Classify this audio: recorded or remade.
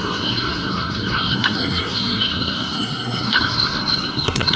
remade